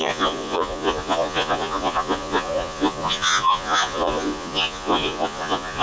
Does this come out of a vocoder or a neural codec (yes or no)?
yes